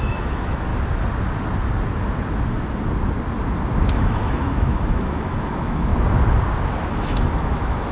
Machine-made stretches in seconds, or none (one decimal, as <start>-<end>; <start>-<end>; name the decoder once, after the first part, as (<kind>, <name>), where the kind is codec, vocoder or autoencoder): 0.0-0.7 (autoencoder, DAC-VAE); 3.9-5.9; 6.8-7.9